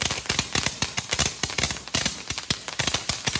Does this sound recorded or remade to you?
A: recorded